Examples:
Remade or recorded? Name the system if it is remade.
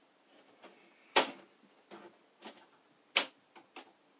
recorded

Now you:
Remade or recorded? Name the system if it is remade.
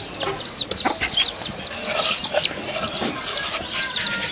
recorded